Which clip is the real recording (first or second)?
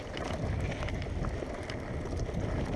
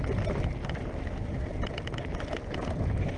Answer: second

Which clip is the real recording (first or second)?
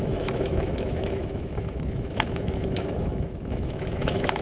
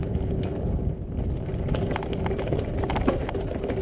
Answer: second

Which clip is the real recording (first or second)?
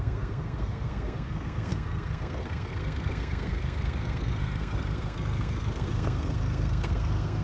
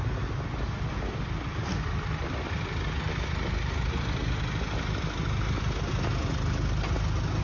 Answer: second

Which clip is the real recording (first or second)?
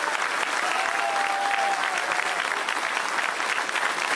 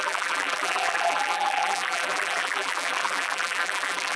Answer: first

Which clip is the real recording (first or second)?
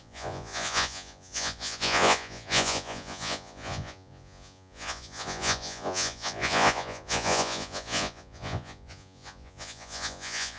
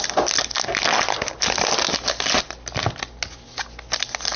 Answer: second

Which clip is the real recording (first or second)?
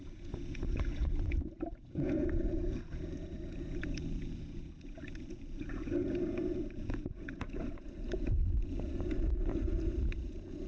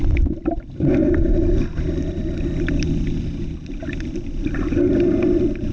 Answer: second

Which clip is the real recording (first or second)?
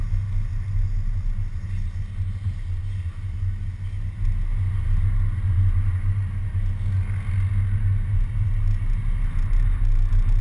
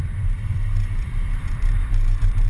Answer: first